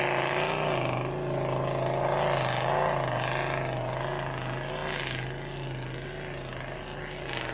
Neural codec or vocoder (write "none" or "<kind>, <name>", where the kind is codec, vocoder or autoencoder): none